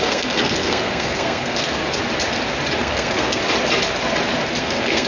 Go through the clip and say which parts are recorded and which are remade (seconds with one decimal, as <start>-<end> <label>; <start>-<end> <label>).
0.0-1.8 remade; 1.8-2.8 recorded; 2.8-3.4 remade; 3.4-4.6 recorded; 4.6-5.1 remade